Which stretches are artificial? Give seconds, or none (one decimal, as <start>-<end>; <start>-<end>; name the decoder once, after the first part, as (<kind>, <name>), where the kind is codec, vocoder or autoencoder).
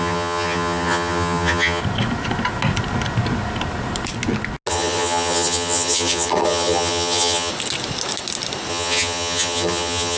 0.0-1.8 (vocoder, HiFi-GAN); 4.7-7.5; 8.7-10.2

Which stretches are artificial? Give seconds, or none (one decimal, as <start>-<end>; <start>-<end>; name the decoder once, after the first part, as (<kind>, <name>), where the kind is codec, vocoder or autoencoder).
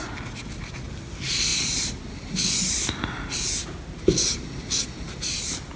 none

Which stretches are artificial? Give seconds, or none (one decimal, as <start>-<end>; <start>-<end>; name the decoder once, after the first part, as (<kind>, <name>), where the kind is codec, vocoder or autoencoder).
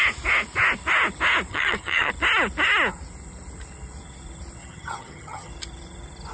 1.5-2.1 (vocoder, HiFi-GAN); 4.6-5.5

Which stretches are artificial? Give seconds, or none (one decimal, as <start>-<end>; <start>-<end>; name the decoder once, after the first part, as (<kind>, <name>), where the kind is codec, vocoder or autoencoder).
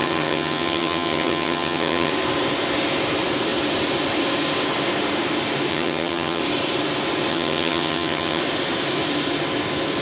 0.0-2.1 (vocoder, HiFi-GAN); 5.7-6.4; 7.3-8.4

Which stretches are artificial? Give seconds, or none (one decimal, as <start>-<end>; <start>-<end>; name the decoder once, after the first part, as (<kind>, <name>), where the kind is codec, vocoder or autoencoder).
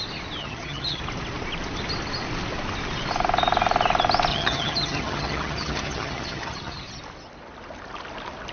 0.4-1.0 (vocoder, HiFi-GAN); 4.3-7.0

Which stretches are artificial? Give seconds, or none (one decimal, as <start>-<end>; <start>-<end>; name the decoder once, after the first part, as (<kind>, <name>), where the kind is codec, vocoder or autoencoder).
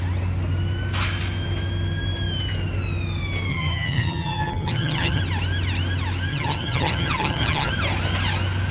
3.5-5.2 (vocoder, HiFi-GAN); 6.3-7.7